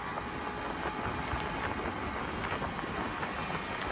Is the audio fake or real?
real